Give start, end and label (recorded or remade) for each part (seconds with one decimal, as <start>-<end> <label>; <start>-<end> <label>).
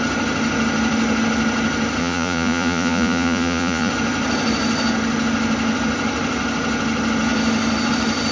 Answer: 0.0-2.0 recorded; 2.0-3.9 remade; 3.9-8.3 recorded